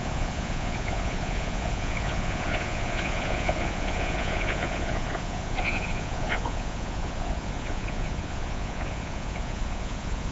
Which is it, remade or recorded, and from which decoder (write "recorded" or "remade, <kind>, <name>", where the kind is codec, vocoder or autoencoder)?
remade, vocoder, Vocos